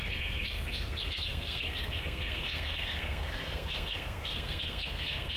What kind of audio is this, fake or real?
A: fake